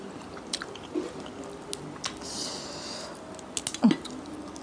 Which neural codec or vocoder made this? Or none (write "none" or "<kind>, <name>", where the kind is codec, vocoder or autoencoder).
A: none